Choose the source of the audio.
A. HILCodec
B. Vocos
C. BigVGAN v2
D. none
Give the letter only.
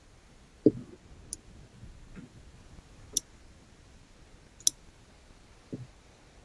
D